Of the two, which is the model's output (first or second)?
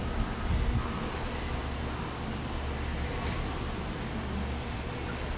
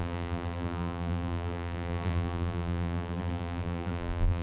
second